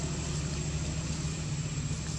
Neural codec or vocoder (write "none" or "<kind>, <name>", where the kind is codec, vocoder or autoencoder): none